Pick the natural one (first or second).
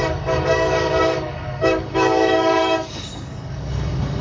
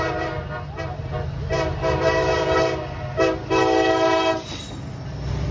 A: second